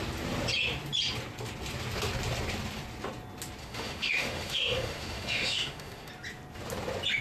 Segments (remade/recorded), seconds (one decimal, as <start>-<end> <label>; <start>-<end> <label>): 0.0-3.6 recorded; 3.6-6.1 remade; 6.1-7.2 recorded